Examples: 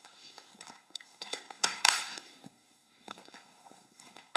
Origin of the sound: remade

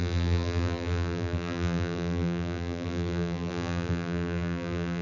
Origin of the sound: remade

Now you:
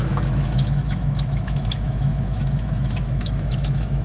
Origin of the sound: remade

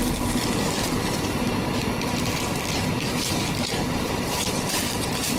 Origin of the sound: remade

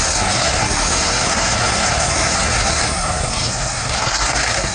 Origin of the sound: remade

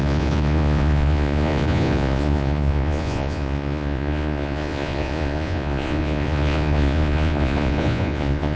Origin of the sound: remade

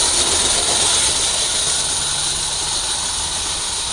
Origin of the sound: recorded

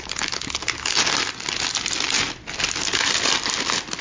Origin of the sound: recorded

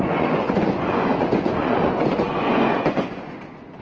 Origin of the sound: remade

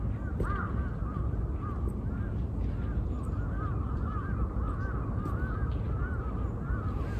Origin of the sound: recorded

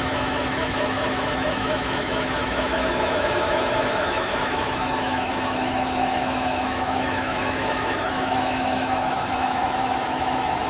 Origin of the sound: remade